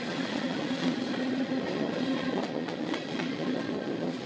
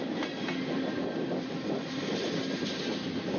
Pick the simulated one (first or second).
first